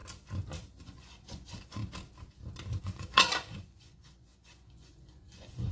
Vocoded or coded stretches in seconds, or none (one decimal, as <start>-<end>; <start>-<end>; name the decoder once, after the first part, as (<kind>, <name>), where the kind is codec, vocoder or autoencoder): 0.8-1.8 (vocoder, Vocos); 2.8-5.7